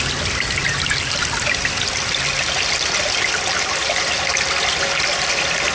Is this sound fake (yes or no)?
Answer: no